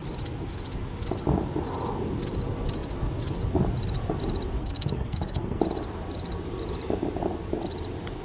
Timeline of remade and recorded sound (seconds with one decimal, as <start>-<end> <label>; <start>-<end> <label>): 0.0-4.6 recorded; 4.6-5.6 remade; 5.6-8.2 recorded